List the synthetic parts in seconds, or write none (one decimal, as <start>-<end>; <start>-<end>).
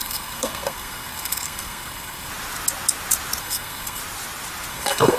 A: 0.0-2.3; 3.4-4.0; 4.7-5.2